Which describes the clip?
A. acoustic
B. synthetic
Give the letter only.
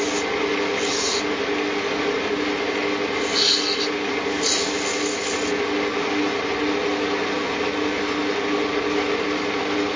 A